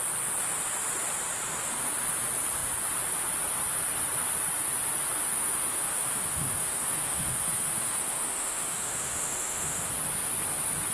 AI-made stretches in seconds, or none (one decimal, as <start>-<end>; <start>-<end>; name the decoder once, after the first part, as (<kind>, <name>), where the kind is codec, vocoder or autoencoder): 5.3-9.9 (autoencoder, DAC-VAE)